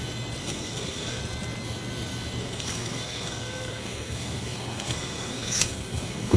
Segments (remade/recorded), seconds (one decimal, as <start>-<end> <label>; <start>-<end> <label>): 0.0-0.4 recorded; 0.4-1.2 remade; 1.2-2.4 recorded; 2.4-6.4 remade